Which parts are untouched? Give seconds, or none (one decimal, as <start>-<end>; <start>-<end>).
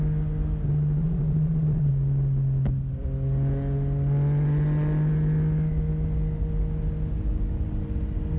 0.0-1.0; 1.9-8.4